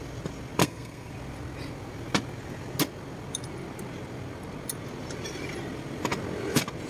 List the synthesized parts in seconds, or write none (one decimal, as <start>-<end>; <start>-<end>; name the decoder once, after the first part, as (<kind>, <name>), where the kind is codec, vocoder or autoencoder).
0.6-1.1 (codec, SNAC)